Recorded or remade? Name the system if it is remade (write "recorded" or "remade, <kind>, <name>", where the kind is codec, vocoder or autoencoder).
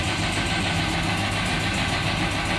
recorded